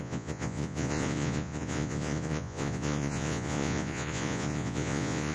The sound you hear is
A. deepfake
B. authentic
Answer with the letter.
A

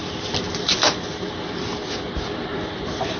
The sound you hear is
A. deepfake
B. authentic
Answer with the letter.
B